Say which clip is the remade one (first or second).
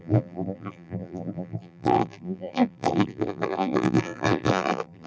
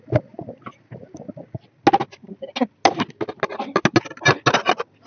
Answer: first